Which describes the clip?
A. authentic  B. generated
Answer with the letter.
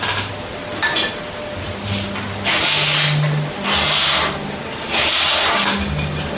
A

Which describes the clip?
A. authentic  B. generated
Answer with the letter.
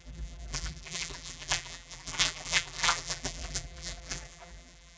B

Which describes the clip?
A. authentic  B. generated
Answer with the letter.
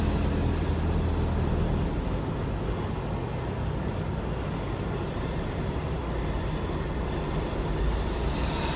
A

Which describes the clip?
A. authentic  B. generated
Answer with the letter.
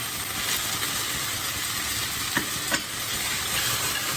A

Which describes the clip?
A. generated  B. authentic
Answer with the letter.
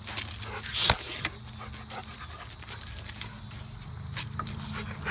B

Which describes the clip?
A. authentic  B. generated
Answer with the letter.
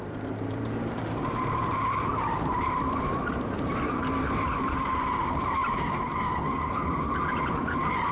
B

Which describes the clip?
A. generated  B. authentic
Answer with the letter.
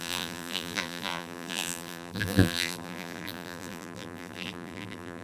A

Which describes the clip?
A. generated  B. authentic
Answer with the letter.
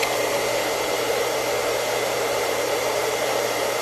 A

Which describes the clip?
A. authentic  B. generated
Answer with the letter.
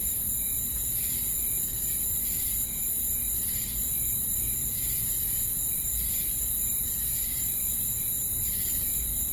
B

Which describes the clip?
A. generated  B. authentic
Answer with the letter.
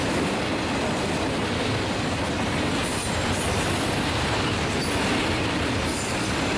B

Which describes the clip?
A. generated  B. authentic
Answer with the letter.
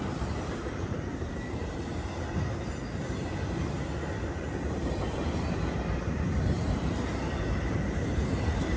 A